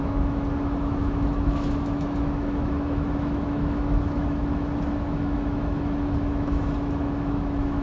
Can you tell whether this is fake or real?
fake